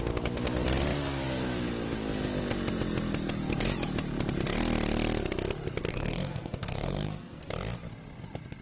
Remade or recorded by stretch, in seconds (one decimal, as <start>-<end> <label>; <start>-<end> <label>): 0.0-5.9 recorded; 5.9-7.5 remade; 7.5-8.6 recorded